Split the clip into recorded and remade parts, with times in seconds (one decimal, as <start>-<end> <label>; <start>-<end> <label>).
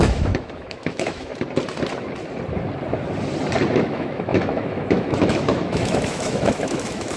0.0-1.3 remade; 1.3-3.7 recorded; 3.7-7.2 remade